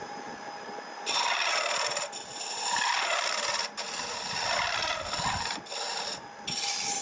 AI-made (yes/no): no